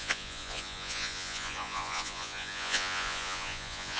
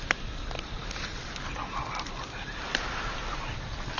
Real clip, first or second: second